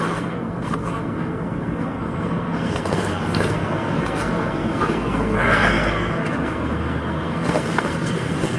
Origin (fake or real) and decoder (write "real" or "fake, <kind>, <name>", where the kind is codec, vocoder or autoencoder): fake, codec, SNAC